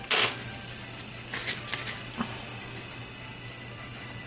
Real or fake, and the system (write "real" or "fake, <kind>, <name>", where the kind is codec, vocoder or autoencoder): real